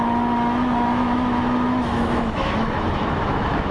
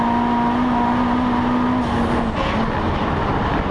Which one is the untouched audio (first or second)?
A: second